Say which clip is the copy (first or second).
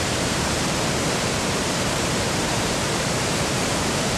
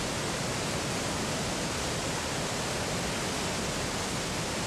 first